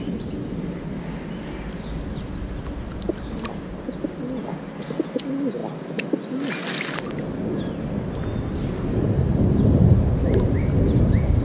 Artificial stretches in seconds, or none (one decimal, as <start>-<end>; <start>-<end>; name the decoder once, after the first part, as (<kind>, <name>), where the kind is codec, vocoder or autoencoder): none